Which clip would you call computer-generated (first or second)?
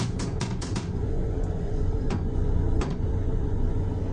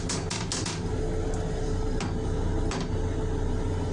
first